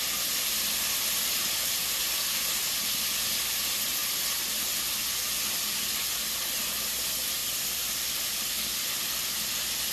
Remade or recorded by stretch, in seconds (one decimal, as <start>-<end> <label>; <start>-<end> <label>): 0.0-9.9 recorded